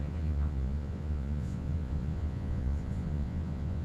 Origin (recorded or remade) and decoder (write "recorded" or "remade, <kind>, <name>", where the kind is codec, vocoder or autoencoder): remade, vocoder, Vocos